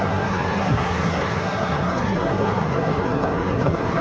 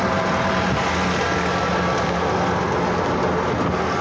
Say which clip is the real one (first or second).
second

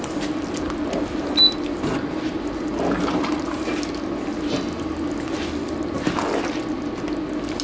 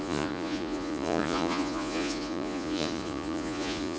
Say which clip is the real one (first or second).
first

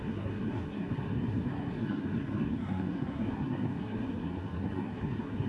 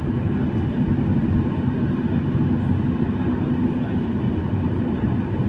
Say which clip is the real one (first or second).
second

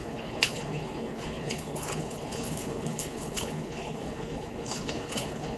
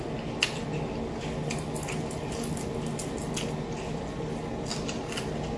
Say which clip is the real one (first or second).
second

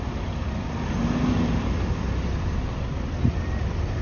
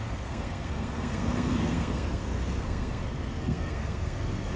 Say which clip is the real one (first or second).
first